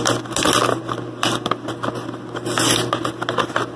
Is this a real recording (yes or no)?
yes